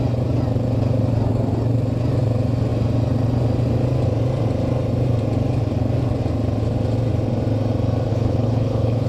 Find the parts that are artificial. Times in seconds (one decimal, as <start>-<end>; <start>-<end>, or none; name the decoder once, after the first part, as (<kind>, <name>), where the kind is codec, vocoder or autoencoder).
8.1-9.1 (codec, HILCodec)